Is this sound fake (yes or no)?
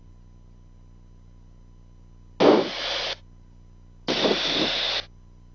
no